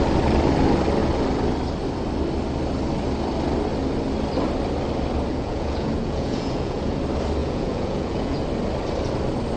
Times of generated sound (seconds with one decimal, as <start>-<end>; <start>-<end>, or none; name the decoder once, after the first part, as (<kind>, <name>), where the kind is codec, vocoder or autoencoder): 5.3-7.0 (vocoder, Vocos); 7.4-8.4